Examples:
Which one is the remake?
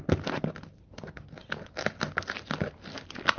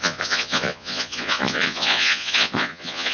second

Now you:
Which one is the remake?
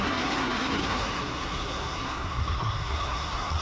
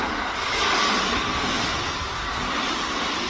first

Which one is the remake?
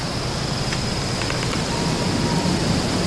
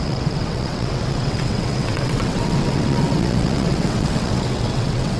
second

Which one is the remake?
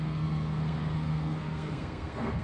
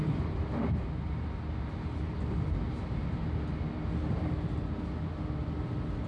first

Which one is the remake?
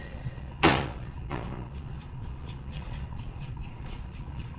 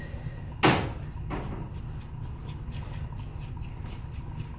first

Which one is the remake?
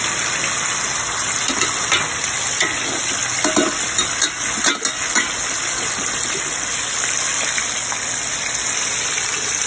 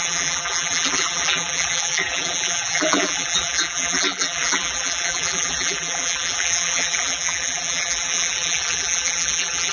second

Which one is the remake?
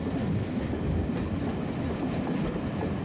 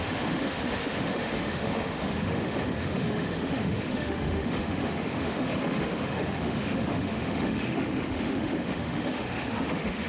second